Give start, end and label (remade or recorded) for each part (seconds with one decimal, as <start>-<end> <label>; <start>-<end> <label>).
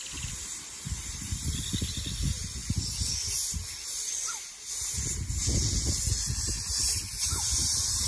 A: 0.0-8.1 recorded